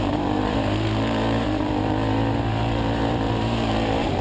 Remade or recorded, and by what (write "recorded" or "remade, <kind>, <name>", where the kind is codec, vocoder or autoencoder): remade, vocoder, BigVGAN v2